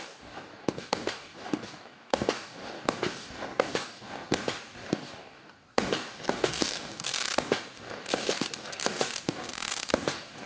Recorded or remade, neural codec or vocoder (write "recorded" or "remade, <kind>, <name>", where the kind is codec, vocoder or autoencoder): remade, codec, DAC